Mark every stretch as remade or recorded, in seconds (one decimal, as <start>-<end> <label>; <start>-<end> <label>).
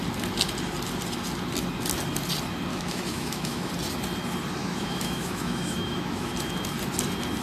0.0-2.7 recorded; 2.7-3.7 remade; 3.7-4.6 recorded; 4.6-6.3 remade; 6.3-7.4 recorded